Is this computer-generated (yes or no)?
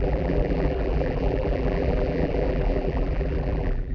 yes